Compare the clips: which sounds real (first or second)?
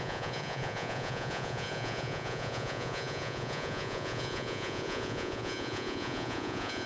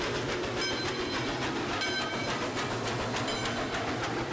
second